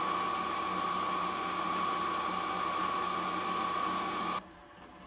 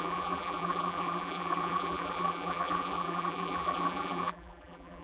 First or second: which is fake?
second